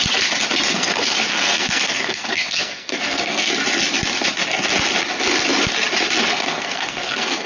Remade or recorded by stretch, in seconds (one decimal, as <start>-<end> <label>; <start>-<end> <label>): 0.0-0.7 recorded; 0.7-3.5 remade; 3.5-6.2 recorded; 6.2-7.5 remade